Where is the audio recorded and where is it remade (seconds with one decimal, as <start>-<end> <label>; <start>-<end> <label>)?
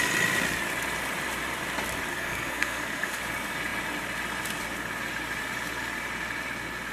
0.0-2.1 recorded; 2.1-3.2 remade; 3.2-6.9 recorded